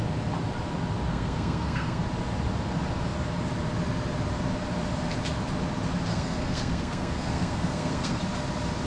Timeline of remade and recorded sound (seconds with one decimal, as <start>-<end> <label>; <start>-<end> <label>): 0.0-1.1 recorded; 1.1-2.0 remade; 2.0-6.1 recorded; 6.1-8.2 remade; 8.2-8.9 recorded